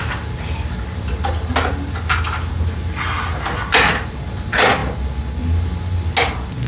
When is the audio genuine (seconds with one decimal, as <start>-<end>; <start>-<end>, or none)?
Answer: 0.0-6.7